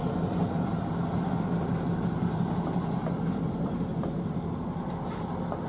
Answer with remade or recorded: recorded